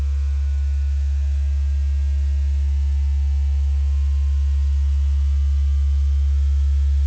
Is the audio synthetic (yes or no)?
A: no